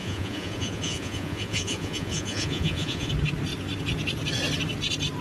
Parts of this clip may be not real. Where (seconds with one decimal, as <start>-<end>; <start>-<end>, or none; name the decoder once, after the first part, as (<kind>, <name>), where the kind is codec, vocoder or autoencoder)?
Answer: 0.0-3.1 (vocoder, Vocos)